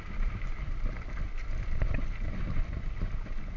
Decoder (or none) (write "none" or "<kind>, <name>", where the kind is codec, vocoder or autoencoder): none